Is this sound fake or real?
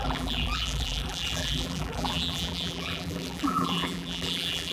fake